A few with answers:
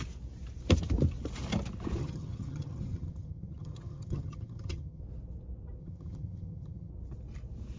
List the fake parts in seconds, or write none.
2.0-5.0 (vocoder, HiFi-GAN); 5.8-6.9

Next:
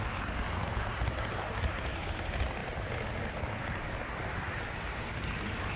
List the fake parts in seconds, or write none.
none

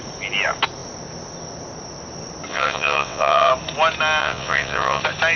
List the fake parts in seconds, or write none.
2.5-3.5 (vocoder, WaveNeXt); 4.2-5.0

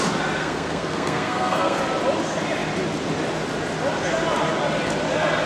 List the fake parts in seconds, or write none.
0.4-1.8 (codec, SNAC)

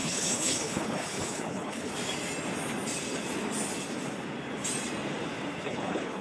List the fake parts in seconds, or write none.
0.0-1.9 (codec, HILCodec); 5.6-6.2

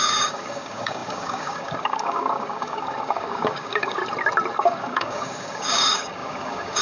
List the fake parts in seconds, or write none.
0.0-4.0 (codec, DAC); 4.6-6.8